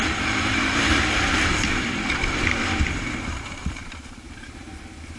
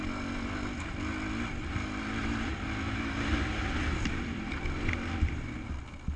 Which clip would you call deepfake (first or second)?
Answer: first